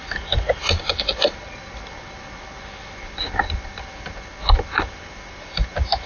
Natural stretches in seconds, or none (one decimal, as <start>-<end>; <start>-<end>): 0.0-6.1